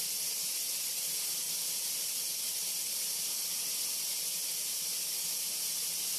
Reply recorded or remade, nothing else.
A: recorded